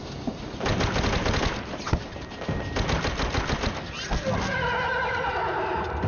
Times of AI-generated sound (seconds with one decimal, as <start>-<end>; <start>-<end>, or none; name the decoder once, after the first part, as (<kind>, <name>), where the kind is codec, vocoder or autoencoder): none